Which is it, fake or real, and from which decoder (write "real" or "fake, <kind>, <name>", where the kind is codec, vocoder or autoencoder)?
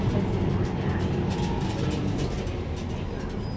real